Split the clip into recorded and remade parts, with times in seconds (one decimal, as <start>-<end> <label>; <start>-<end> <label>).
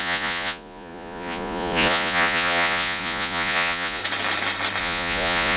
0.0-4.0 remade; 4.0-4.8 recorded; 4.8-5.6 remade